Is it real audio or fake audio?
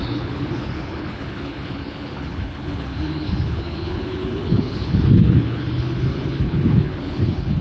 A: fake